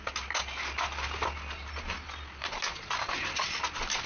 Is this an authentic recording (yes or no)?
yes